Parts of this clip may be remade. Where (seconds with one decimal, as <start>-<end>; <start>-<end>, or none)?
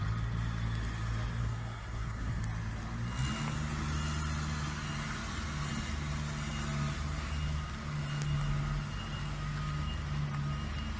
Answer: 1.4-2.4